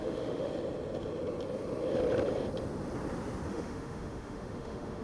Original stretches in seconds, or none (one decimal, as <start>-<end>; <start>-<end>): 0.5-3.5